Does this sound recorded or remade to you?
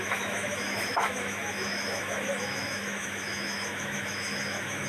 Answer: remade